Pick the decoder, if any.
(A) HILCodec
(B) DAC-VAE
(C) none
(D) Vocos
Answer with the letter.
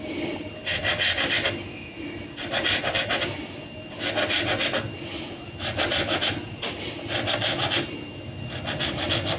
C